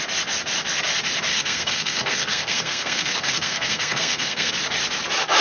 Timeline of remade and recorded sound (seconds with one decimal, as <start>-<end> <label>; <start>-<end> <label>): 0.0-1.3 recorded; 1.3-4.5 remade; 4.5-5.4 recorded